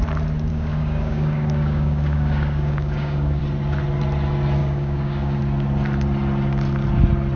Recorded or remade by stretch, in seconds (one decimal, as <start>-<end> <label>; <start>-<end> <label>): 0.0-0.5 recorded; 0.5-3.4 remade; 3.4-4.6 recorded; 4.6-5.4 remade; 5.4-7.4 recorded